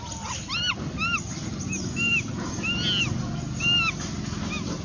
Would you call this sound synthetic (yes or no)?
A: no